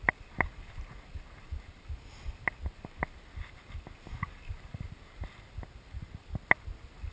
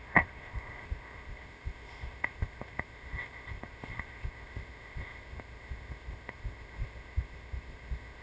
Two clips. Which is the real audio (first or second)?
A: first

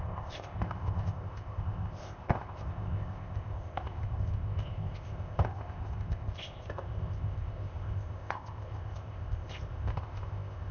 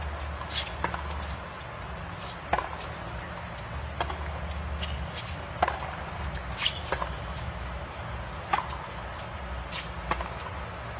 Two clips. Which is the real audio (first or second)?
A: second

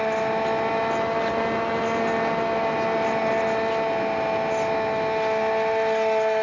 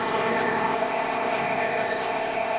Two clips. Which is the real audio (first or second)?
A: first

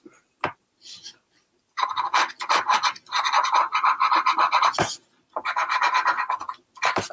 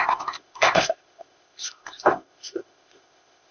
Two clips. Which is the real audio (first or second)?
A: first